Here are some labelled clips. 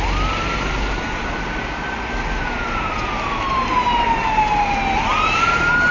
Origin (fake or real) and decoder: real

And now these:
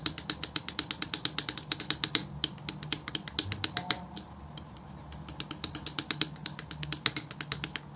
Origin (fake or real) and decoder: real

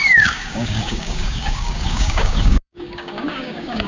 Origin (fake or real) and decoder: fake, codec, DAC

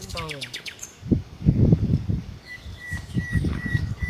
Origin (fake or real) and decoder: fake, codec, DAC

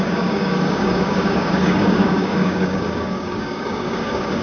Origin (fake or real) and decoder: fake, codec, DAC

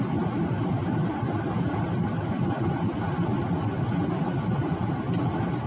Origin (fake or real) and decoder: real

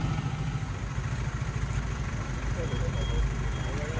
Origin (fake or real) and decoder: real